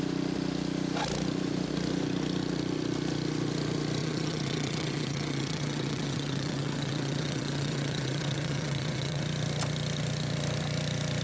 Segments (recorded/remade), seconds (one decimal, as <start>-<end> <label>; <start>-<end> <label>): 0.0-4.0 recorded; 4.0-9.2 remade; 9.2-11.2 recorded